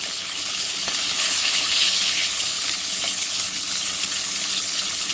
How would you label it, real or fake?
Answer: fake